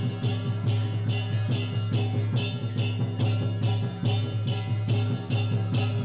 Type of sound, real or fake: real